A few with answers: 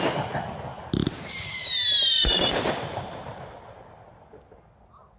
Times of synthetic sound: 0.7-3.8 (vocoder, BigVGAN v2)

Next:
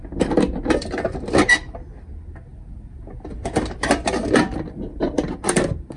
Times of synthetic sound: 2.5-5.3 (vocoder, BigVGAN v2)